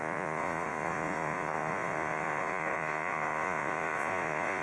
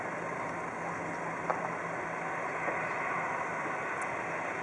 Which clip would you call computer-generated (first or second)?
first